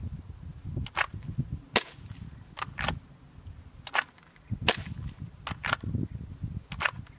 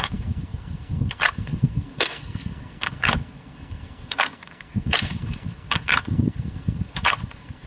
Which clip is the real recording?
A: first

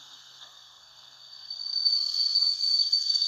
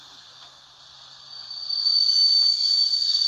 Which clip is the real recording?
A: second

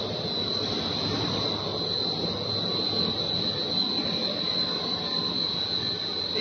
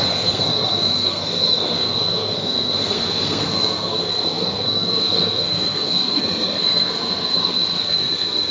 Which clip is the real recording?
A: first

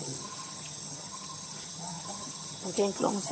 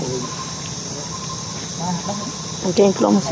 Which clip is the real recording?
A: second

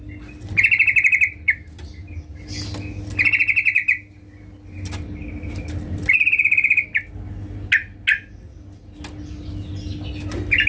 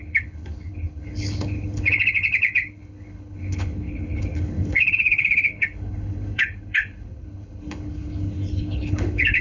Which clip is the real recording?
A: first